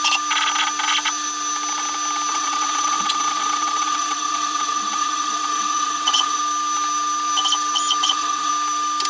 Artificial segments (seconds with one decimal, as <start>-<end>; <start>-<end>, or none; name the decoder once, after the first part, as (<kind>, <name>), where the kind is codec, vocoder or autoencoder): 2.3-6.4 (vocoder, WaveNeXt); 8.0-8.5